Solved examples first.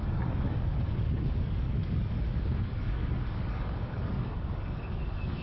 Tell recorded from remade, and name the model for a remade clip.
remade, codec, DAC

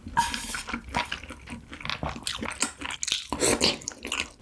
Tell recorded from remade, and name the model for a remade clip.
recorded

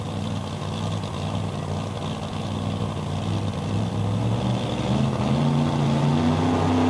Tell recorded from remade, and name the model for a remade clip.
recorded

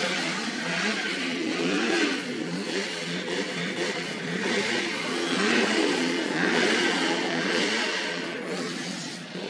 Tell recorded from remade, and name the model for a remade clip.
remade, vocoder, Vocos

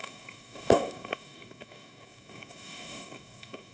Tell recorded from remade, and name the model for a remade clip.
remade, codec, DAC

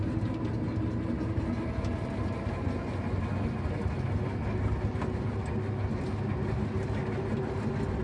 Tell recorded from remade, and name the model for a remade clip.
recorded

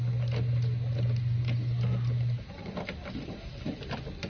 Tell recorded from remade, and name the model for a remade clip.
recorded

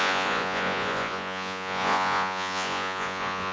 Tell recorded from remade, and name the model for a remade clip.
remade, vocoder, Vocos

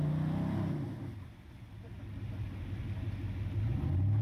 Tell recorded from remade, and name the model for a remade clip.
recorded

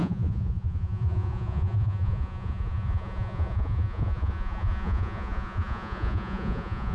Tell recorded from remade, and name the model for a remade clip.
remade, vocoder, Vocos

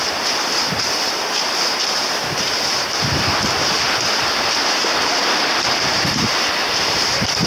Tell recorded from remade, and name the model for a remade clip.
remade, vocoder, BigVGAN v2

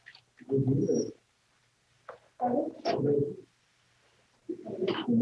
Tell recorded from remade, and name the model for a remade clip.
recorded